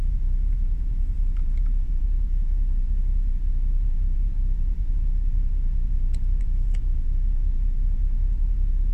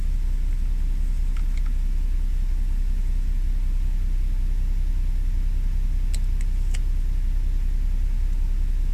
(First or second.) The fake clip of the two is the first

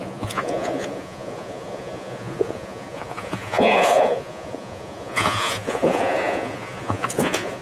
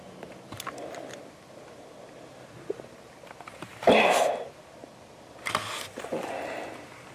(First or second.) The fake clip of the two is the first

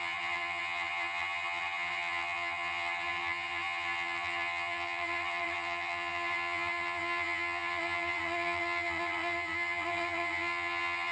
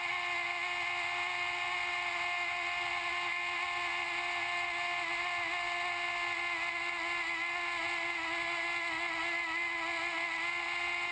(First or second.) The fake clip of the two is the first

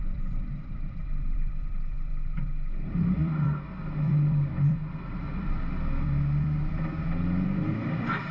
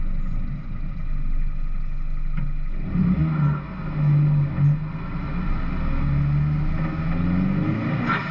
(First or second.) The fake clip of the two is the first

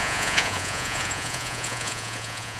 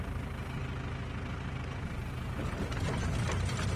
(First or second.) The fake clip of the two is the first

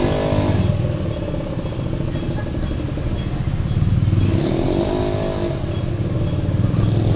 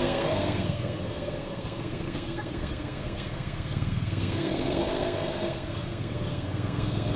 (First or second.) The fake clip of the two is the second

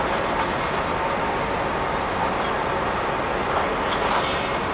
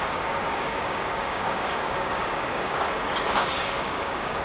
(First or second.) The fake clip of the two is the second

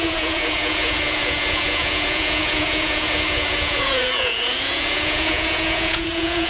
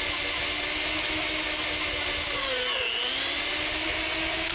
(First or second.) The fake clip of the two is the first